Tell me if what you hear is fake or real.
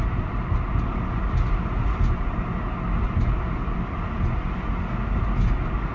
real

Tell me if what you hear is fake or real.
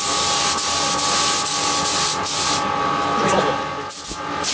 real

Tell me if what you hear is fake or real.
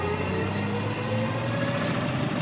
real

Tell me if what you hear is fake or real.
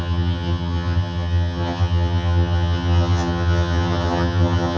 fake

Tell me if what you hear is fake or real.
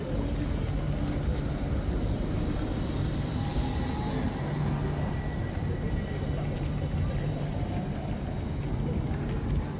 real